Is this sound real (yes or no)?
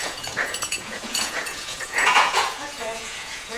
no